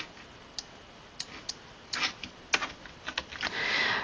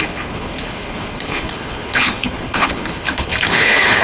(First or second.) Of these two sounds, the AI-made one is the second